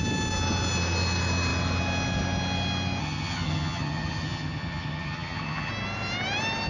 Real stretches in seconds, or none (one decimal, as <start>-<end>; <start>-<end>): 0.0-3.0; 5.7-6.7